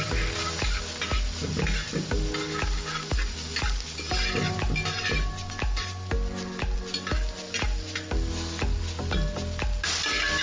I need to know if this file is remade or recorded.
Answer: recorded